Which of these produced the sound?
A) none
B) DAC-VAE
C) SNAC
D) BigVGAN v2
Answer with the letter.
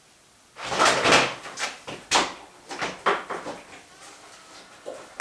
A